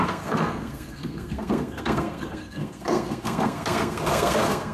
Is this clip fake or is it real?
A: fake